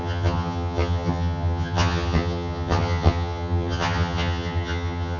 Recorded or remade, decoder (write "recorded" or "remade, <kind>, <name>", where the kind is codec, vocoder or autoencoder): remade, vocoder, HiFi-GAN